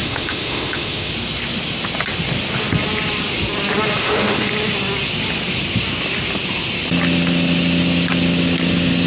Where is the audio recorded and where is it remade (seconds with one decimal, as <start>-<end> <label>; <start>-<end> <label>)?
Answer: 0.0-1.1 remade; 1.1-4.0 recorded; 4.0-4.5 remade; 4.5-9.1 recorded